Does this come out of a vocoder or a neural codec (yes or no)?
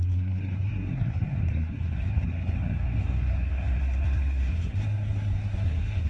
yes